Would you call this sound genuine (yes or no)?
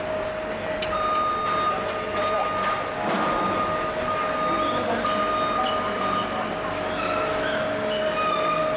yes